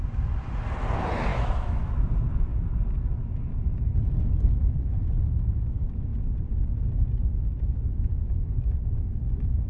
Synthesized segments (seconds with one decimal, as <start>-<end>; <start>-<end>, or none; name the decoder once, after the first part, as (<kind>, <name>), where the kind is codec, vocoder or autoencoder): 1.3-1.9 (autoencoder, DAC-VAE)

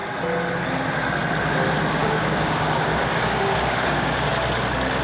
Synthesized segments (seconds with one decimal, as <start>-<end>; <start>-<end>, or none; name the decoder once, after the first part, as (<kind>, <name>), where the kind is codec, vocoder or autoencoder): 2.0-4.3 (codec, DAC)

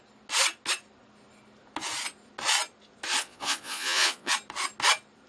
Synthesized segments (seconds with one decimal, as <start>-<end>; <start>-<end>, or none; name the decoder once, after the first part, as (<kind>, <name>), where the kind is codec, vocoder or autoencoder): 3.2-4.3 (vocoder, Vocos)